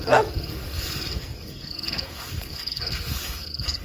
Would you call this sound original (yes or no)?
no